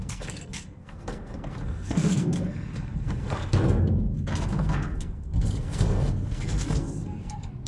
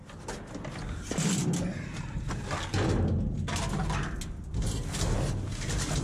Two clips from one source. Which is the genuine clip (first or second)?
second